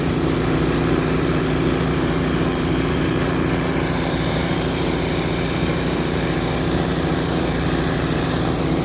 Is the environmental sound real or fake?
fake